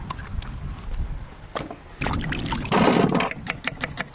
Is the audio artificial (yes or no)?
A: no